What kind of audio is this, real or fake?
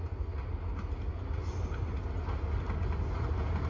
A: real